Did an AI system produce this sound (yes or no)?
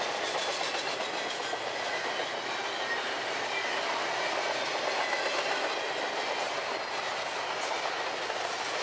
no